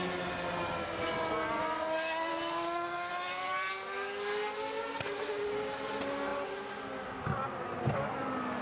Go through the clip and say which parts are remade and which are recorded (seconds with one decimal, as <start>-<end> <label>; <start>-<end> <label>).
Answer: 0.0-2.3 recorded; 2.3-3.1 remade; 3.1-8.6 recorded